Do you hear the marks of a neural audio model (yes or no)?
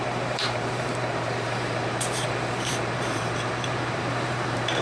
yes